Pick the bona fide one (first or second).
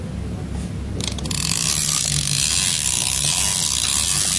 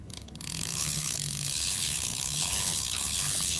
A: first